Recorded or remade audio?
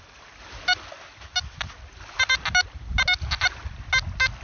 recorded